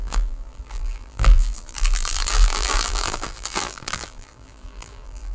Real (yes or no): no